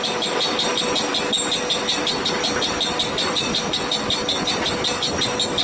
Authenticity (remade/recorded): recorded